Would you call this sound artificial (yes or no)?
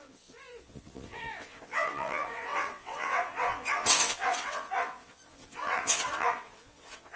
yes